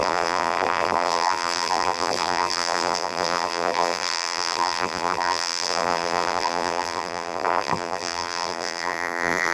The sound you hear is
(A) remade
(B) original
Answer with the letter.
A